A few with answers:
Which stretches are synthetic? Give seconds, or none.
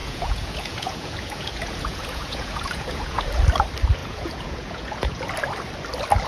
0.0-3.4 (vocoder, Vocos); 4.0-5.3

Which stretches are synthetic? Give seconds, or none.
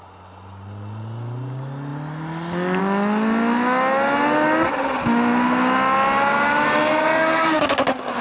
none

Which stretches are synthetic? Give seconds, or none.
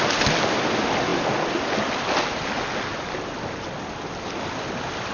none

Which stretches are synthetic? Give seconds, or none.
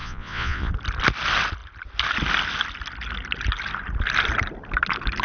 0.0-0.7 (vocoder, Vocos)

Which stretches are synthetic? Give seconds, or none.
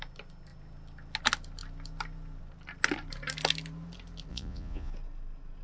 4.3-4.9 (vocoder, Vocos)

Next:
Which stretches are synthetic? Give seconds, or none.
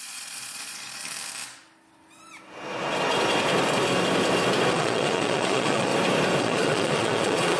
0.0-1.0 (vocoder, Vocos); 4.7-5.9; 6.4-7.6